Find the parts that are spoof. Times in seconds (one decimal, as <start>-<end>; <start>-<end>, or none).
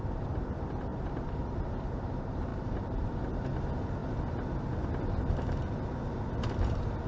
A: 0.9-2.1; 2.5-3.2